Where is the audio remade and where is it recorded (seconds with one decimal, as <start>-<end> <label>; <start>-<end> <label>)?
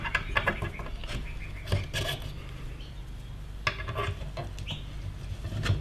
0.0-5.8 recorded